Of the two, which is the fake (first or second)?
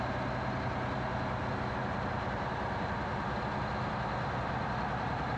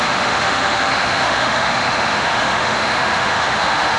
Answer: second